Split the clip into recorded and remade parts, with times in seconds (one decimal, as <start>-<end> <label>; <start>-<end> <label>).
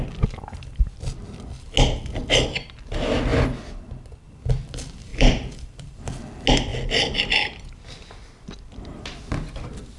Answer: 0.0-5.1 recorded; 5.1-6.2 remade; 6.2-10.0 recorded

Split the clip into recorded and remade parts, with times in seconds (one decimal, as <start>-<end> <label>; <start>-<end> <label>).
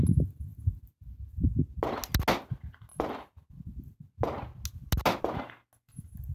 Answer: 0.0-6.3 recorded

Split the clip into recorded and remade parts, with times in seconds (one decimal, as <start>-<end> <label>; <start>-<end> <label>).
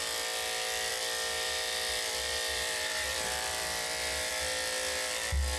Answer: 0.0-0.9 recorded; 0.9-4.3 remade; 4.3-5.6 recorded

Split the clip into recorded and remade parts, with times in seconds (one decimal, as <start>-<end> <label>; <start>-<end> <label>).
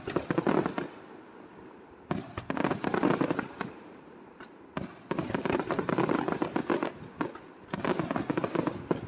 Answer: 0.0-1.5 recorded; 1.5-6.4 remade; 6.4-9.1 recorded